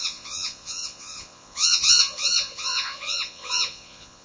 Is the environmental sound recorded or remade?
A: remade